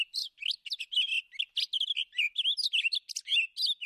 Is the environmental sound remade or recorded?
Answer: recorded